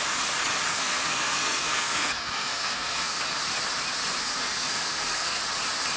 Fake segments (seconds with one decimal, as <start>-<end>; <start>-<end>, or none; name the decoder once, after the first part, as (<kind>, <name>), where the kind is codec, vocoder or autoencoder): 0.7-3.2 (codec, SNAC); 4.2-5.4